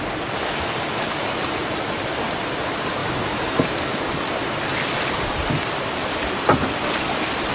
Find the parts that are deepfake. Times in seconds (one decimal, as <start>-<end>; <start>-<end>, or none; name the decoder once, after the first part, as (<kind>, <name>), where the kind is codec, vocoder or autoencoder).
3.0-5.5 (vocoder, BigVGAN v2)